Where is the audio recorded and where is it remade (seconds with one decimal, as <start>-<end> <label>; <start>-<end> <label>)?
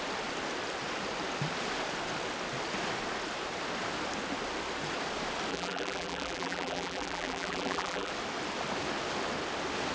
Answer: 0.0-5.5 recorded; 5.5-8.1 remade; 8.1-9.9 recorded